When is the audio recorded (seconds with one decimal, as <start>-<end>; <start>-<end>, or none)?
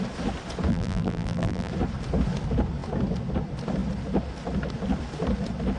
0.0-0.7; 1.7-5.8